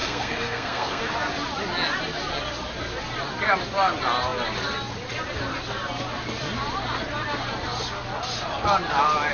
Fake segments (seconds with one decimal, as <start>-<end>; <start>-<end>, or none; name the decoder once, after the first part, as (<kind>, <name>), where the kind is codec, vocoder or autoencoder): 0.0-1.0 (codec, SNAC)